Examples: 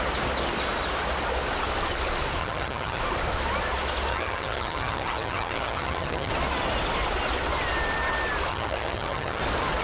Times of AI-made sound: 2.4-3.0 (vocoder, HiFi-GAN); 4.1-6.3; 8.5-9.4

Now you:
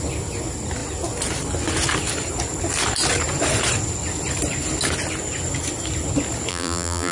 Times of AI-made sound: 6.5-7.1 (vocoder, BigVGAN v2)

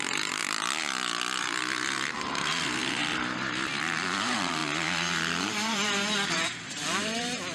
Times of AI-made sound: 0.0-0.4 (vocoder, BigVGAN v2); 1.4-4.6; 5.4-7.5

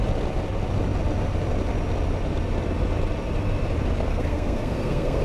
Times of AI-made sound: 4.1-5.2 (codec, SNAC)

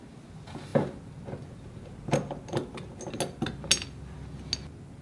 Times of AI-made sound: none